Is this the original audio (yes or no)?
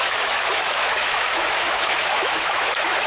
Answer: no